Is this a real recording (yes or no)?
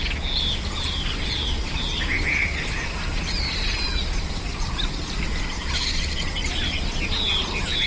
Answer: yes